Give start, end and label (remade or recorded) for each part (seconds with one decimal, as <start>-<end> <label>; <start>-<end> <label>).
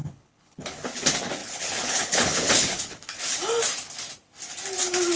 0.0-0.9 remade; 0.9-1.4 recorded; 1.4-3.2 remade; 3.2-5.2 recorded